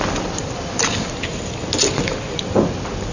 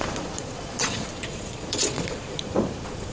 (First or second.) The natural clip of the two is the first